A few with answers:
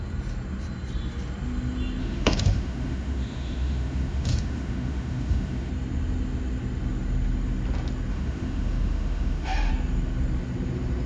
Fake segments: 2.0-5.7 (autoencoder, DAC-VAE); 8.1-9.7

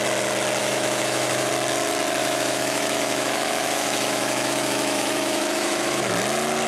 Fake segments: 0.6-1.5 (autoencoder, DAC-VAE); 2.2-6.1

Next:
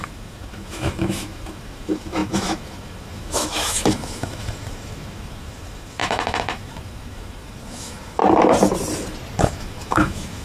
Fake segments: 0.0-8.2 (autoencoder, DAC-VAE); 9.4-10.4

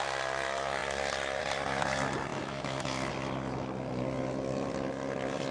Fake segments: 2.3-3.1 (autoencoder, DAC-VAE)

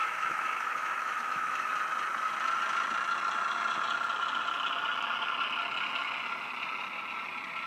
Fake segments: 0.0-1.7 (autoencoder, DAC-VAE)

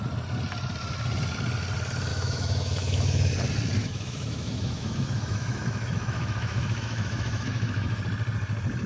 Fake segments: 2.1-3.3 (autoencoder, DAC-VAE); 3.8-8.0

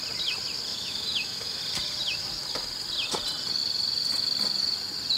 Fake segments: 0.7-1.6 (autoencoder, DAC-VAE)